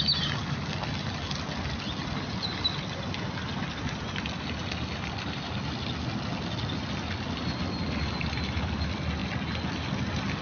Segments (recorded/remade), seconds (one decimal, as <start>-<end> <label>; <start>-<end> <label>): 0.0-10.4 recorded